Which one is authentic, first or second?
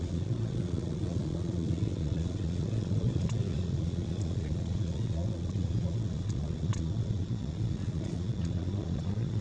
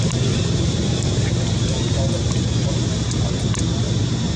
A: second